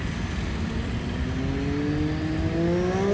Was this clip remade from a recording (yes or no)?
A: no